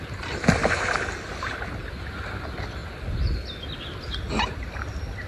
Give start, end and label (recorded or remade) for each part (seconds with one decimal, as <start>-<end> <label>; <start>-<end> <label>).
0.0-5.3 recorded